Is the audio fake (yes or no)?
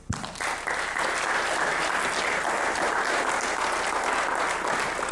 no